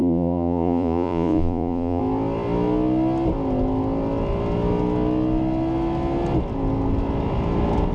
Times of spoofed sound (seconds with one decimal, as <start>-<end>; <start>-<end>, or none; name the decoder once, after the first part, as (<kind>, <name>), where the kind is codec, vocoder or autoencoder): 0.0-2.0 (vocoder, Vocos)